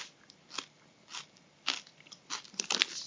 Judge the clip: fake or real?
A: real